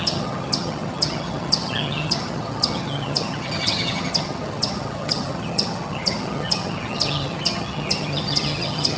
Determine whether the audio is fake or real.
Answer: fake